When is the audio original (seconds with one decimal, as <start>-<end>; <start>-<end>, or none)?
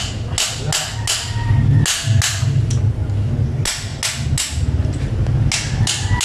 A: 0.0-6.2